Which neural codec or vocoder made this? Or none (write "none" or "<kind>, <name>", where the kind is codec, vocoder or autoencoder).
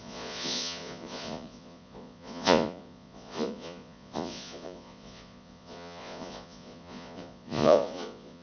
vocoder, Vocos